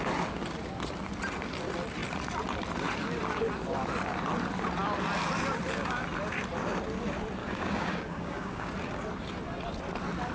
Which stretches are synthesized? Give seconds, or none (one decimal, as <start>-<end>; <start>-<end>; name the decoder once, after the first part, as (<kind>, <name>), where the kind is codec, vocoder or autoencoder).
7.4-8.7 (codec, DAC)